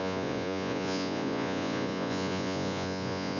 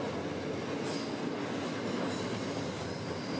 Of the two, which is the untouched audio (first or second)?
second